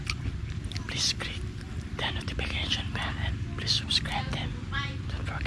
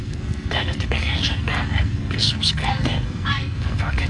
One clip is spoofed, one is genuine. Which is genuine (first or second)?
first